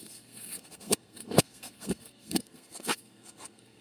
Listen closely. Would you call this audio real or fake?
fake